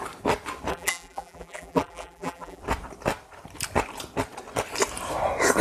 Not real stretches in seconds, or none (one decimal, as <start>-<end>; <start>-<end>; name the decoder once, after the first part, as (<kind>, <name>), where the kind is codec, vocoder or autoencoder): 0.7-2.6 (vocoder, BigVGAN v2)